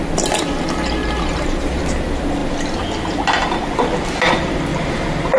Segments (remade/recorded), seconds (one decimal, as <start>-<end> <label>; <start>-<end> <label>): 0.0-1.0 recorded; 1.0-1.8 remade; 1.8-4.7 recorded; 4.7-5.4 remade